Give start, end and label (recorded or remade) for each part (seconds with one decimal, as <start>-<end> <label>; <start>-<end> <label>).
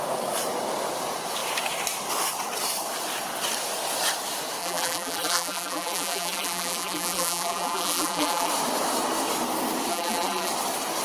0.0-4.6 recorded; 4.6-8.5 remade; 8.5-9.9 recorded; 9.9-10.5 remade; 10.5-11.0 recorded